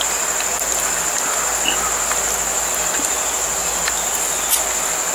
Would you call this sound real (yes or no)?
yes